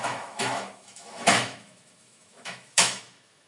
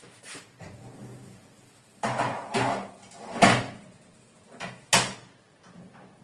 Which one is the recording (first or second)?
second